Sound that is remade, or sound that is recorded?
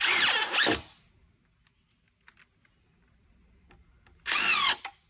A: recorded